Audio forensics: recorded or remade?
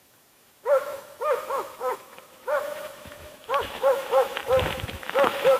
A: remade